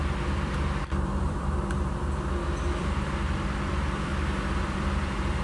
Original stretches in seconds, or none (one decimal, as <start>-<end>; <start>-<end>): 4.1-4.6